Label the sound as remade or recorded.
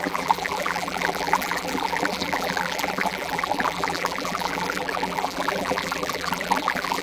remade